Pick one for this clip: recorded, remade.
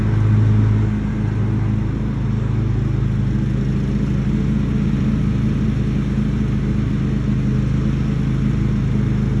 recorded